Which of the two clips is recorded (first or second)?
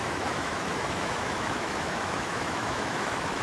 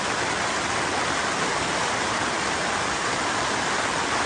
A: second